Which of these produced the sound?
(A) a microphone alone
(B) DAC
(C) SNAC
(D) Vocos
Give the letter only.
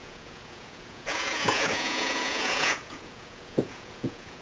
D